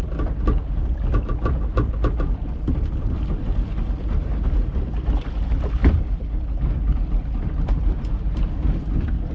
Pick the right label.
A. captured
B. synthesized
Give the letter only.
A